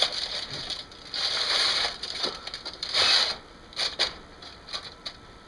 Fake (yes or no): no